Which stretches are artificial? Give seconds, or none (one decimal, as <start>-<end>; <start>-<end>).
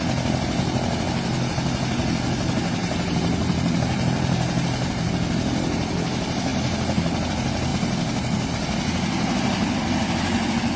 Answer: 2.8-5.1; 7.7-8.5